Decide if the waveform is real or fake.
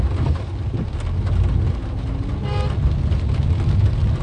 real